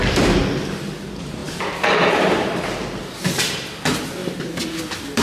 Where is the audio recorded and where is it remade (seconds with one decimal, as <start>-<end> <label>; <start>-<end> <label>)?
0.0-4.2 remade; 4.2-4.8 recorded; 4.8-5.2 remade